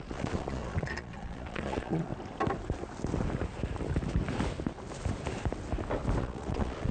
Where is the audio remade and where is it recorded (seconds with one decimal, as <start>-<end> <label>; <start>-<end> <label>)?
0.0-2.1 remade; 2.1-6.2 recorded; 6.2-6.9 remade